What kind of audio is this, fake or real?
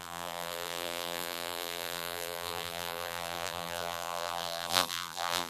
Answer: fake